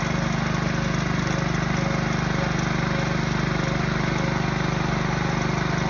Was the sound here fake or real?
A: real